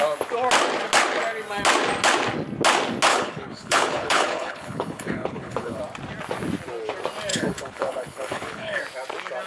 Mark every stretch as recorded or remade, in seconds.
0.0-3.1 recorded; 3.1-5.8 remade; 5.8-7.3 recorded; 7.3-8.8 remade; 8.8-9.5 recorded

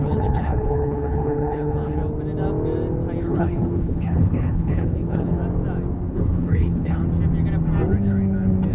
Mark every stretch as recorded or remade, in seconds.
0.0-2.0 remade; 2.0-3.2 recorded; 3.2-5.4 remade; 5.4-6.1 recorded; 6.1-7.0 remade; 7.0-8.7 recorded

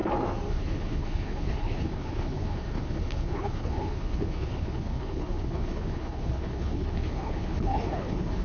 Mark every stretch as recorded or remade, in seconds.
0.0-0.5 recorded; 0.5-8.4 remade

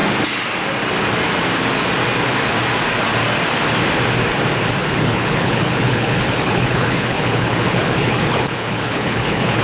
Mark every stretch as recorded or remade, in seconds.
0.0-4.8 recorded; 4.8-9.6 remade